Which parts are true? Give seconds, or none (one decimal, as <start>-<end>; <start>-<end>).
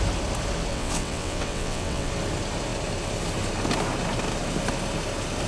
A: 0.0-0.7; 2.1-5.5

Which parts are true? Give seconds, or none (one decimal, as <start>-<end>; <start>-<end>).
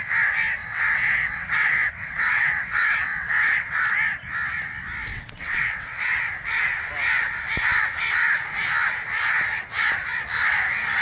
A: 0.0-0.6; 3.8-5.1; 6.0-11.0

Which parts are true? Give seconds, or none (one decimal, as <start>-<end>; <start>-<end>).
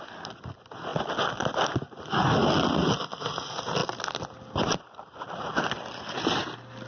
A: 0.0-6.9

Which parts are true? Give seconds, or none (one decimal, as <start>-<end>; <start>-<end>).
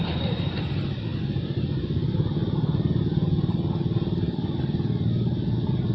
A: 0.0-5.9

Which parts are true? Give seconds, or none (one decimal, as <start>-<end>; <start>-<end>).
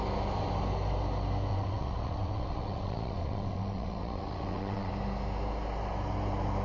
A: 0.0-1.5; 4.9-6.6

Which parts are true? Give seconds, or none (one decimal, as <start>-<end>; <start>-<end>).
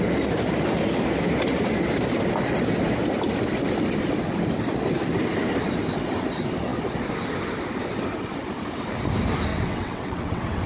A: 0.0-9.5